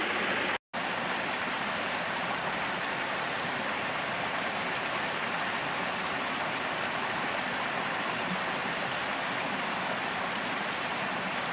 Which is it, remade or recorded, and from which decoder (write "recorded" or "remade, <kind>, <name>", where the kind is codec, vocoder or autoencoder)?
recorded